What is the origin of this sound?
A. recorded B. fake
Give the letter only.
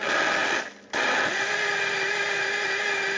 A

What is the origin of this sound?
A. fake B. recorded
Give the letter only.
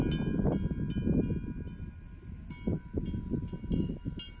B